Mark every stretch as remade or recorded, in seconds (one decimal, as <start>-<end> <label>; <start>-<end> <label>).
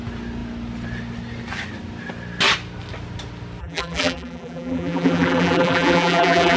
0.0-3.6 recorded; 3.6-6.6 remade